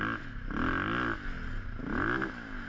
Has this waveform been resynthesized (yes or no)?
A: no